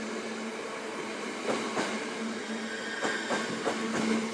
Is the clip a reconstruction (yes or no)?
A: no